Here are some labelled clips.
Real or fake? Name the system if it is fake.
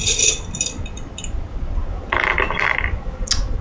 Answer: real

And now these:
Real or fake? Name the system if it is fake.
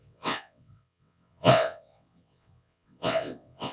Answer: fake, vocoder, WaveNeXt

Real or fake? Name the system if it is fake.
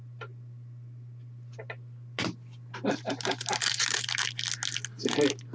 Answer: real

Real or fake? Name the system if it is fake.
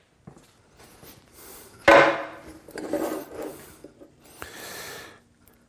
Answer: real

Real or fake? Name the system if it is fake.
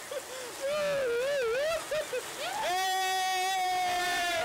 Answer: real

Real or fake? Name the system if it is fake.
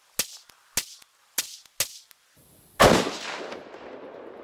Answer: real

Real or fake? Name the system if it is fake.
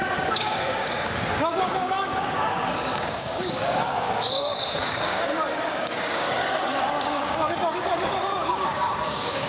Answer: fake, codec, DAC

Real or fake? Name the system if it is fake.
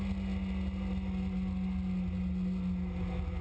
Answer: real